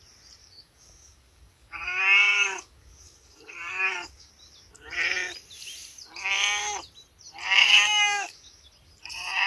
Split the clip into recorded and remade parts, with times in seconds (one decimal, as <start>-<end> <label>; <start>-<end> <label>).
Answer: 0.0-0.4 recorded; 0.4-4.3 remade; 4.3-7.6 recorded; 7.6-8.7 remade; 8.7-9.5 recorded